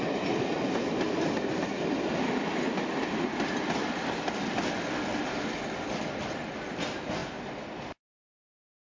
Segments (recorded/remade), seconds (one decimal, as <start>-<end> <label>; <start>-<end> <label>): 0.0-9.0 recorded